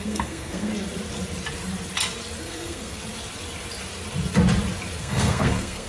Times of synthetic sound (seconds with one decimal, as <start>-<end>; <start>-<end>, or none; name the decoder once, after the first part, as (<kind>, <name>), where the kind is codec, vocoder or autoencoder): 0.0-0.7 (codec, SNAC); 2.4-3.0; 5.0-5.9